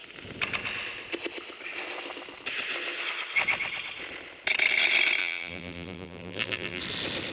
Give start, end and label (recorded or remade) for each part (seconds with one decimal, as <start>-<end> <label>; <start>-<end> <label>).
0.0-5.2 recorded; 5.2-6.8 remade; 6.8-7.3 recorded